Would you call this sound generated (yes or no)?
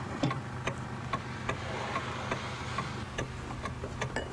no